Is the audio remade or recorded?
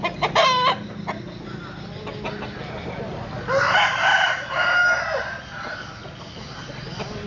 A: recorded